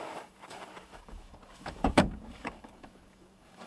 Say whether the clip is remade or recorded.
remade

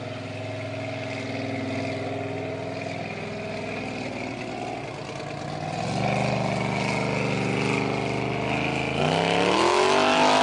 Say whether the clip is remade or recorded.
recorded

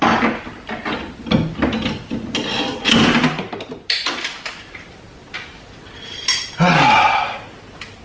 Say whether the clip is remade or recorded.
recorded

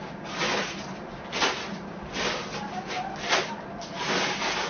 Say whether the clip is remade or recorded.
recorded